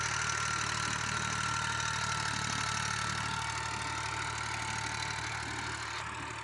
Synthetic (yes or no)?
no